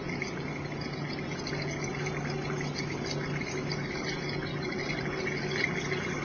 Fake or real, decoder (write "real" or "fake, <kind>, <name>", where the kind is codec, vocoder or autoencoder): real